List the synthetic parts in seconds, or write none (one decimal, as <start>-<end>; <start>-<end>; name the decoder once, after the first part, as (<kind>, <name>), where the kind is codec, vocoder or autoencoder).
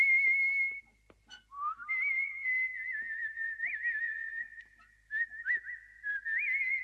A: none